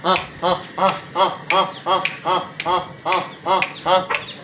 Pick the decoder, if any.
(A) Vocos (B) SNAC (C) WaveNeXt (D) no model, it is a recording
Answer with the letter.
D